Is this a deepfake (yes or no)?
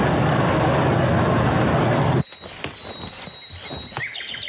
no